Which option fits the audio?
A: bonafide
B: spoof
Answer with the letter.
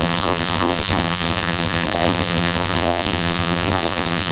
B